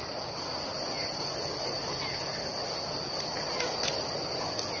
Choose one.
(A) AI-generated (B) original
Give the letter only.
B